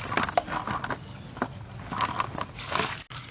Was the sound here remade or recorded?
recorded